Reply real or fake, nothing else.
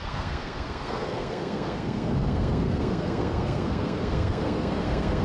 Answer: fake